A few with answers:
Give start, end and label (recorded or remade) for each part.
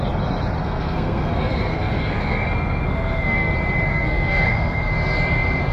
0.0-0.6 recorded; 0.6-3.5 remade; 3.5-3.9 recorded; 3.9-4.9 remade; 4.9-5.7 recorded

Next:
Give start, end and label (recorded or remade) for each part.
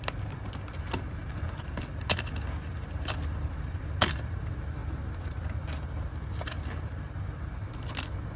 0.0-8.4 recorded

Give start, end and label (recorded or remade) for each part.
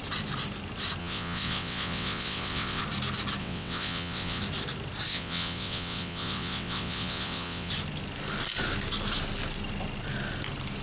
0.0-1.0 recorded; 1.0-2.8 remade; 2.8-3.4 recorded; 3.4-4.4 remade; 4.4-5.1 recorded; 5.1-7.7 remade; 7.7-10.8 recorded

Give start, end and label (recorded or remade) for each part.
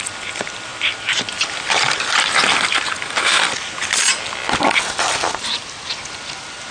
0.0-6.7 recorded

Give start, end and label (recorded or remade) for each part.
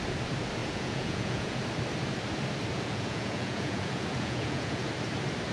0.0-0.6 recorded; 0.6-1.6 remade; 1.6-2.7 recorded; 2.7-4.9 remade; 4.9-5.5 recorded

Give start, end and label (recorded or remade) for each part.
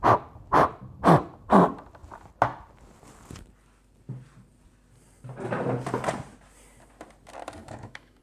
0.0-7.6 recorded; 7.6-8.2 remade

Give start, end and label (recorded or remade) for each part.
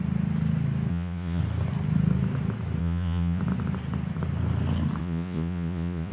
0.0-0.9 recorded; 0.9-1.4 remade; 1.4-2.8 recorded; 2.8-3.4 remade; 3.4-5.0 recorded; 5.0-6.1 remade